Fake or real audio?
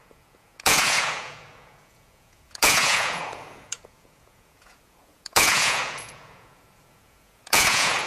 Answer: fake